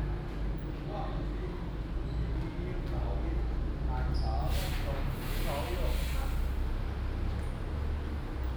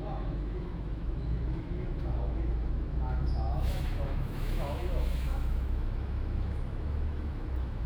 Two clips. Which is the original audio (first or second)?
first